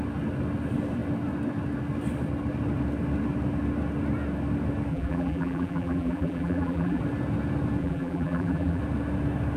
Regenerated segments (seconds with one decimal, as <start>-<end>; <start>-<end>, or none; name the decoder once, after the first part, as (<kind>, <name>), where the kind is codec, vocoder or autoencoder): 4.9-7.0 (vocoder, BigVGAN v2); 7.8-8.8